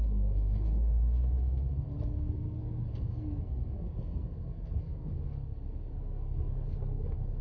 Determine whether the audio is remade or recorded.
remade